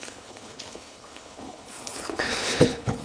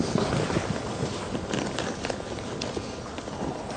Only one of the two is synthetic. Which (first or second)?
first